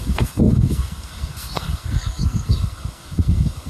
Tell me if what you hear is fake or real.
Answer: fake